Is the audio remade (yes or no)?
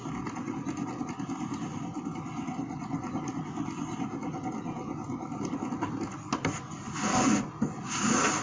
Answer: no